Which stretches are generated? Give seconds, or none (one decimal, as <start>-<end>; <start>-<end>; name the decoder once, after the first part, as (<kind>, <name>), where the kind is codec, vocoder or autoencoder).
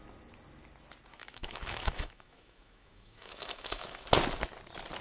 1.1-4.1 (autoencoder, DAC-VAE)